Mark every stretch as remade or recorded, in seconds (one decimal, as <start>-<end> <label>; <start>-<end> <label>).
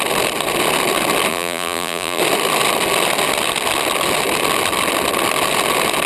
0.0-1.3 recorded; 1.3-2.2 remade; 2.2-6.1 recorded